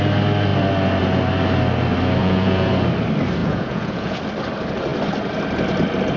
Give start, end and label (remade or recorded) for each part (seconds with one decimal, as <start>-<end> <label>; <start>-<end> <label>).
0.0-2.2 recorded; 2.2-2.7 remade; 2.7-3.4 recorded; 3.4-4.2 remade; 4.2-6.2 recorded